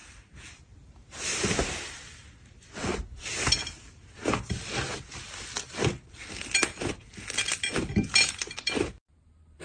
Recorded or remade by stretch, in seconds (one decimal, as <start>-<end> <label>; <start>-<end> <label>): 0.0-2.3 remade; 2.3-9.6 recorded